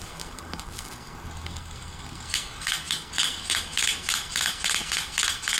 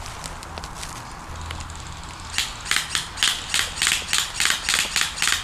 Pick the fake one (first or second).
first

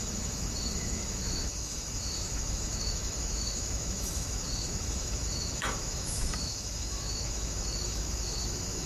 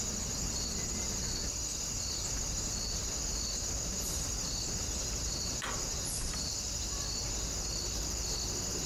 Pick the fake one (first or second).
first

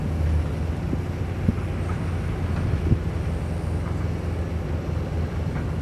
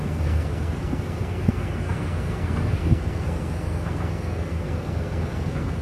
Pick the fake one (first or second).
second